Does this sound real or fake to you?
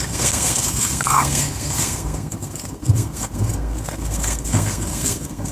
fake